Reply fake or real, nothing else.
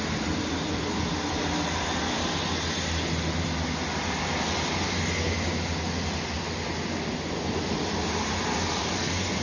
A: real